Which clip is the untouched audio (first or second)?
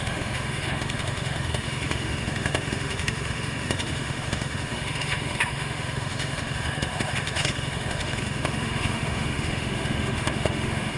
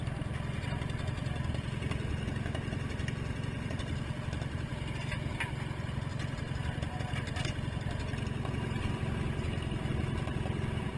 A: second